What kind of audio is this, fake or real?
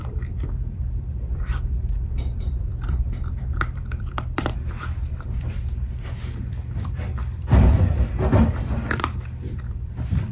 fake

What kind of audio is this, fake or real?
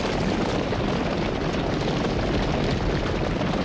real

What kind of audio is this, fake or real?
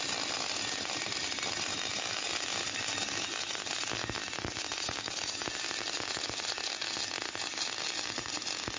real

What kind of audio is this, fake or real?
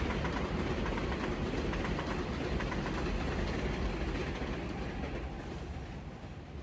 real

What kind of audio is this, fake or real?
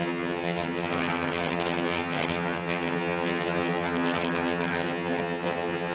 fake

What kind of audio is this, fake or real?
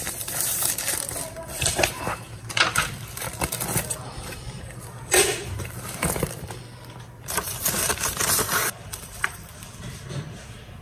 fake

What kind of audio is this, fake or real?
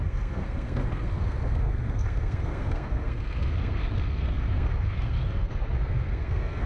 fake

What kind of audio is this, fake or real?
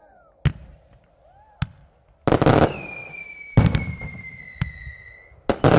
real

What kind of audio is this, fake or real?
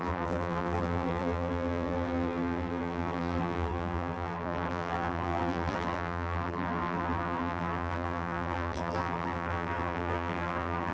fake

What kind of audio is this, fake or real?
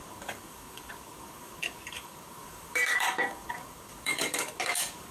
fake